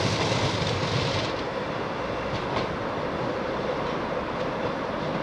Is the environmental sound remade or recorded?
remade